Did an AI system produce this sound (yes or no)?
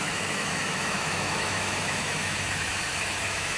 yes